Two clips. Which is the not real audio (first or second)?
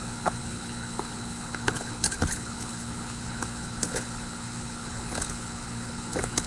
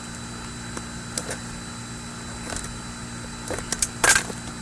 first